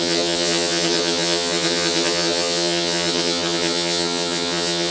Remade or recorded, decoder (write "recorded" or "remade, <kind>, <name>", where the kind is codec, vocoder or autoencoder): remade, vocoder, HiFi-GAN